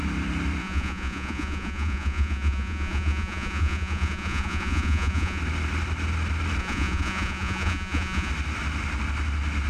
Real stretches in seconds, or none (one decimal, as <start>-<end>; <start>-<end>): 0.0-0.6; 5.4-6.6; 8.3-9.7